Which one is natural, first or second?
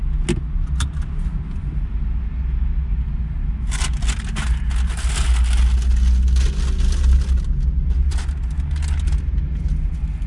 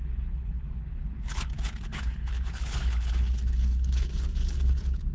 first